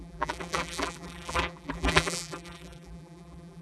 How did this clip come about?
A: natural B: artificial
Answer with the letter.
B